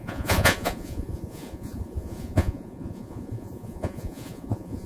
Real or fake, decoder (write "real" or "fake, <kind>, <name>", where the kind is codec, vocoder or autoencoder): fake, vocoder, Vocos